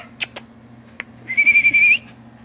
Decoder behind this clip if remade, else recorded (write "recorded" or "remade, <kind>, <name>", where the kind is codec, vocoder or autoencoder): recorded